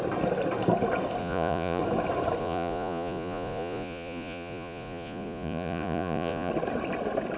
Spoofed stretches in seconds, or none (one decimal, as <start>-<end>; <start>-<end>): 1.2-1.8; 2.4-6.5